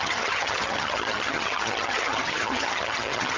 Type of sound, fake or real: fake